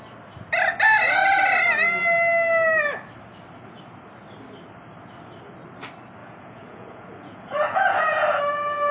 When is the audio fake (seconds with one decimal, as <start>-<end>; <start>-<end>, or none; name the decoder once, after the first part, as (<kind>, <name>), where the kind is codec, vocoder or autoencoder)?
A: 6.2-8.4 (vocoder, Vocos)